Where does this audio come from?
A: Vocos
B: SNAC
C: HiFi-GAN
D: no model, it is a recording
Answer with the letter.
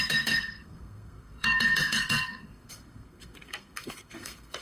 B